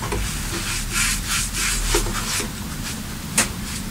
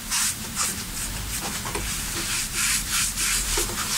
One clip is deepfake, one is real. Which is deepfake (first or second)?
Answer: second